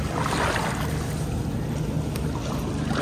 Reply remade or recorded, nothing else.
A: recorded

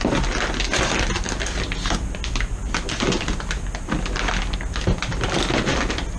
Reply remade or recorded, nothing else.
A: recorded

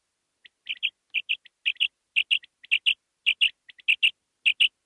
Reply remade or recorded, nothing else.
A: recorded